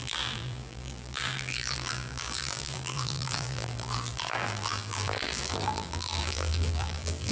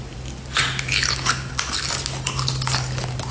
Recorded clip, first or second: second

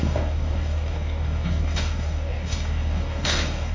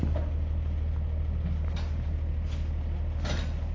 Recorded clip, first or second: second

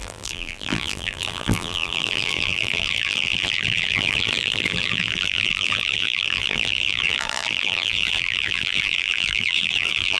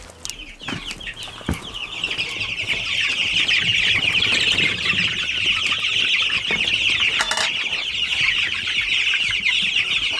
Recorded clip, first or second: second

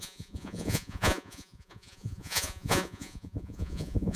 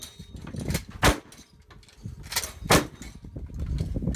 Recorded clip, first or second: second